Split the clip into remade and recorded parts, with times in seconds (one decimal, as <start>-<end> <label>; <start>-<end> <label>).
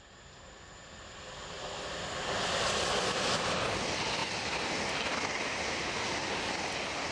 0.0-7.1 recorded